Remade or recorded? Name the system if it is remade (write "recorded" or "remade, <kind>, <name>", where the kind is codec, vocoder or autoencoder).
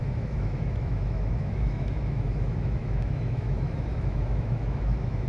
remade, autoencoder, DAC-VAE